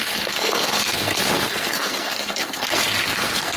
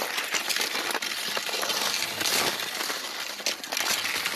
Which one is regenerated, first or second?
first